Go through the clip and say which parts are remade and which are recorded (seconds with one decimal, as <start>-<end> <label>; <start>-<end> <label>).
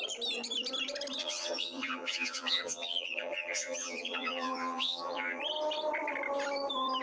0.0-1.2 recorded; 1.2-5.4 remade; 5.4-7.0 recorded